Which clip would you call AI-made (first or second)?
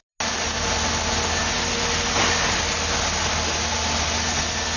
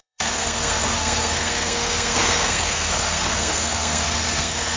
second